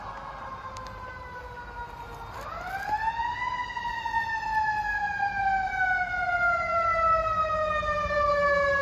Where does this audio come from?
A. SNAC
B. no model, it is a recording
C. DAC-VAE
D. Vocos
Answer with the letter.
B